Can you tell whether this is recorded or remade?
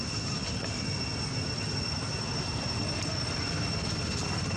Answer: recorded